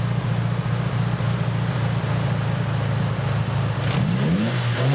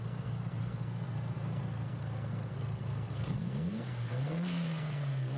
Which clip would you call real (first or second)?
first